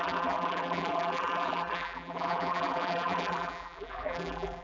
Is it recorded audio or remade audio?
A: remade